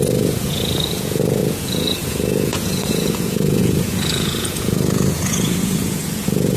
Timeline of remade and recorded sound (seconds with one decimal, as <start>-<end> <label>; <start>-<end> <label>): 0.0-6.6 remade